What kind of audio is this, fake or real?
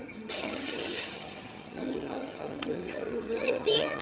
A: fake